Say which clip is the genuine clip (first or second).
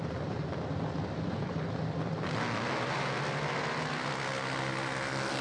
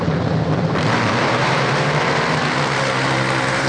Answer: first